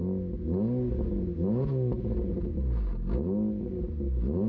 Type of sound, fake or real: real